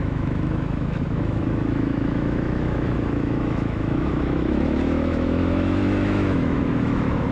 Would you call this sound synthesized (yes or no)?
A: yes